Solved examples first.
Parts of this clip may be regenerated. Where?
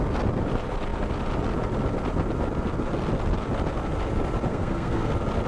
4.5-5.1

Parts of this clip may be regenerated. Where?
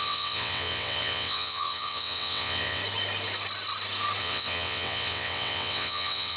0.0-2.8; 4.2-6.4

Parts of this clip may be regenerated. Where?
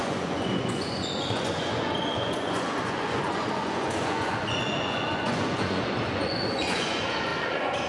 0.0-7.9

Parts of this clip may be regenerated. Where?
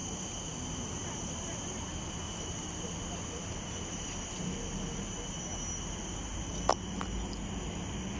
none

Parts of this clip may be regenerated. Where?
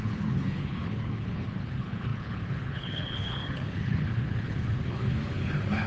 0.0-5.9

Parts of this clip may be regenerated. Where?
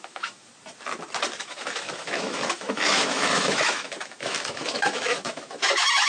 0.0-0.5; 1.4-6.1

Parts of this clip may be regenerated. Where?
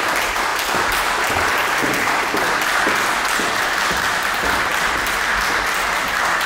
none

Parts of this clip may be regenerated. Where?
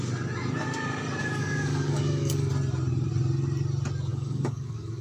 1.2-2.5; 4.1-5.0